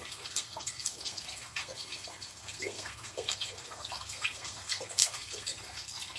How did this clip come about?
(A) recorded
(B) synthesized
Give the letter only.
B